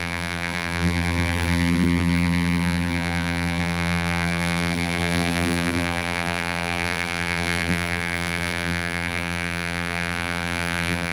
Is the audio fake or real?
fake